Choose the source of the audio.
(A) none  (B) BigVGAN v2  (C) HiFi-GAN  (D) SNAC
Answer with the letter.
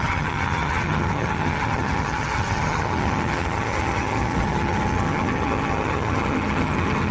C